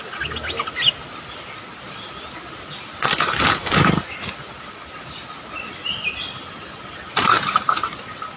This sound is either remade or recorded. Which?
recorded